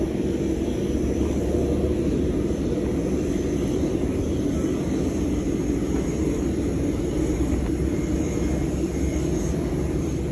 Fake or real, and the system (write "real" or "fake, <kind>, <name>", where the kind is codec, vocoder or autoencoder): real